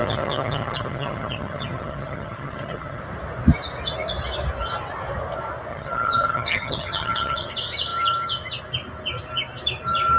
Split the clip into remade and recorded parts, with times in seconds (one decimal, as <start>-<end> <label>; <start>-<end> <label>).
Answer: 0.0-3.0 remade; 3.0-5.7 recorded; 5.7-7.5 remade; 7.5-10.2 recorded